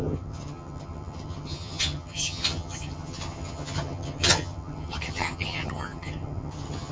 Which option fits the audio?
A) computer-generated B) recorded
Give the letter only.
A